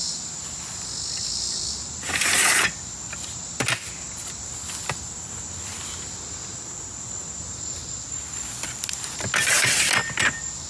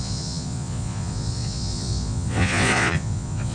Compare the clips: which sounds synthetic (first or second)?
second